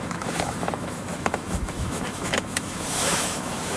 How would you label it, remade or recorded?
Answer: remade